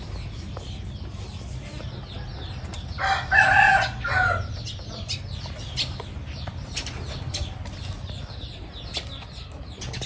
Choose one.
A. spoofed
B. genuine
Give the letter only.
B